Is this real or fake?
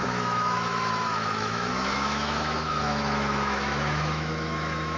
fake